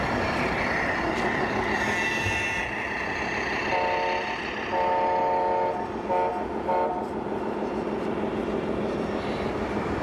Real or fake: real